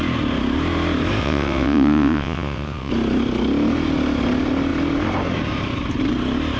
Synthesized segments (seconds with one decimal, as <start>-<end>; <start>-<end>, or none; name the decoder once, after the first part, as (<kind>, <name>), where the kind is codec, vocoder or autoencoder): 1.2-2.9 (vocoder, WaveNeXt)